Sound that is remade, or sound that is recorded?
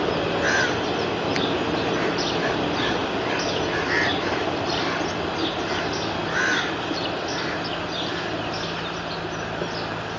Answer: recorded